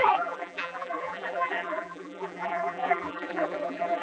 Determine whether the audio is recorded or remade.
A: remade